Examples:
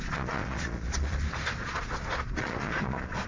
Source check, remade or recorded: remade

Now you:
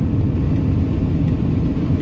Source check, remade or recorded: recorded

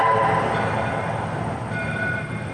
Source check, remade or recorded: remade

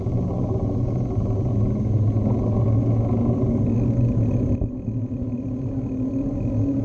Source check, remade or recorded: recorded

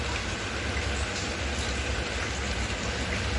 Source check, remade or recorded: recorded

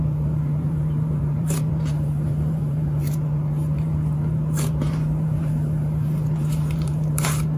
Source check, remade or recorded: remade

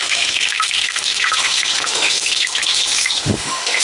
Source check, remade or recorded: remade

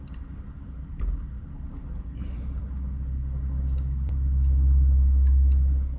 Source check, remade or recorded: recorded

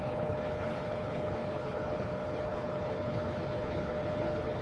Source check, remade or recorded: remade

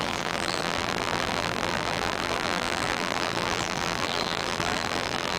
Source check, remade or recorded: remade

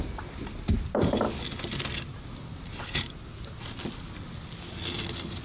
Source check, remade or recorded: recorded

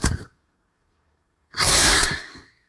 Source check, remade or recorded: remade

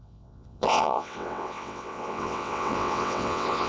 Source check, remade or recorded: remade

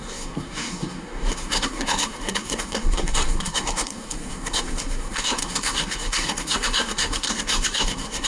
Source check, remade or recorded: remade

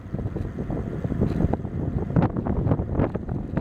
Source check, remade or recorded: recorded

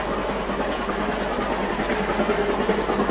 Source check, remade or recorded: recorded